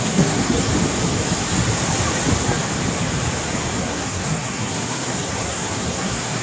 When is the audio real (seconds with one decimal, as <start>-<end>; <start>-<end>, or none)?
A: 0.7-3.8